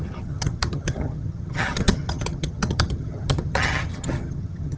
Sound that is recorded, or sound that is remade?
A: remade